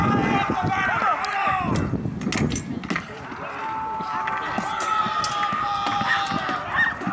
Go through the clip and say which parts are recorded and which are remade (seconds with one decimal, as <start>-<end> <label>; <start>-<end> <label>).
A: 0.0-7.1 recorded